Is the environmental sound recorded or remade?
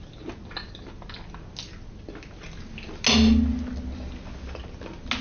recorded